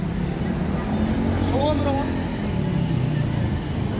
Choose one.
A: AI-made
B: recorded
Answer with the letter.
B